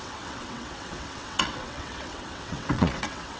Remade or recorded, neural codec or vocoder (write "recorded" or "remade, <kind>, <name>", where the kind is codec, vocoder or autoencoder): remade, vocoder, WaveNeXt